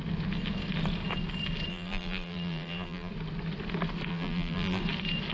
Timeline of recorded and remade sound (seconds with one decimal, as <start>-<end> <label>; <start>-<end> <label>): 0.0-1.7 recorded; 1.7-3.1 remade; 3.1-4.1 recorded; 4.1-4.8 remade; 4.8-5.3 recorded

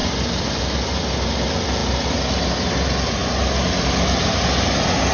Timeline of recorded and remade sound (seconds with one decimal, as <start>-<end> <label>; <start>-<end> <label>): 0.0-5.1 recorded